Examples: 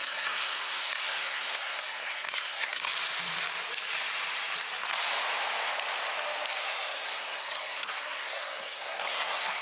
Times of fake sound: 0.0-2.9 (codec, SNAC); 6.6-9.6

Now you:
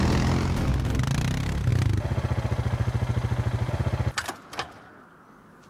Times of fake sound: none

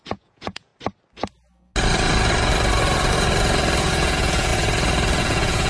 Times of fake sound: 0.0-0.7 (vocoder, Vocos); 3.8-4.5; 5.2-5.7

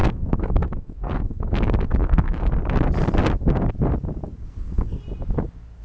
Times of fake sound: 0.0-2.5 (codec, SNAC); 4.4-5.0

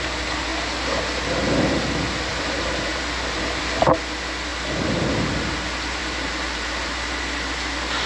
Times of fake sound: 2.3-3.6 (vocoder, BigVGAN v2); 4.5-5.1; 6.0-7.1

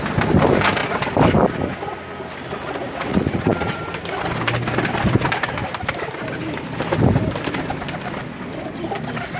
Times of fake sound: 2.8-3.8 (vocoder, Vocos)

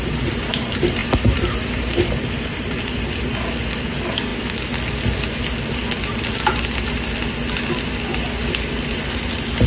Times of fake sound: none

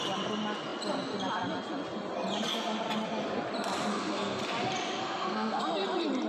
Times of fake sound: 3.9-4.4 (codec, SNAC); 5.0-5.6